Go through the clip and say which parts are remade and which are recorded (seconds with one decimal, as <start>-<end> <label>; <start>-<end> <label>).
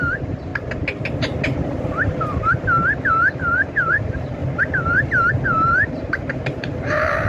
0.0-0.5 remade; 0.5-3.1 recorded; 3.1-4.4 remade; 4.4-5.3 recorded; 5.3-7.3 remade